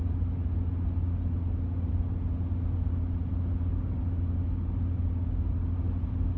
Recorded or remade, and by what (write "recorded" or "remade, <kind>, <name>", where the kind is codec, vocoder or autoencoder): recorded